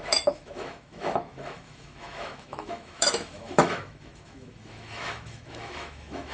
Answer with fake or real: fake